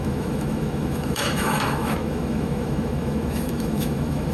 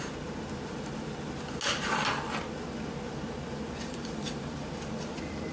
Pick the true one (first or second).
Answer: second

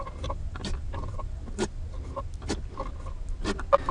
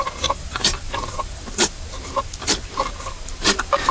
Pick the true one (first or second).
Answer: first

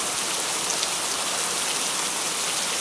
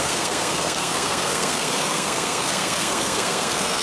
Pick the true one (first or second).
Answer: first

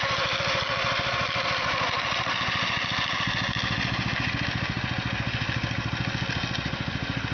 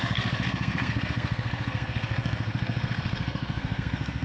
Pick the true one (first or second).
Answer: first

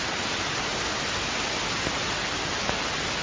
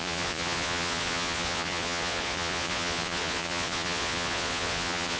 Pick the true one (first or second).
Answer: first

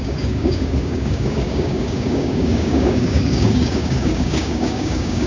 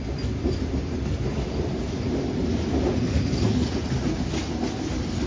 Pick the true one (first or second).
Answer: second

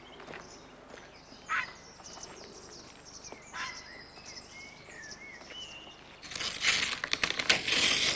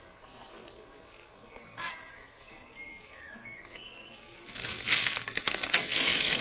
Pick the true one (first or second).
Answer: first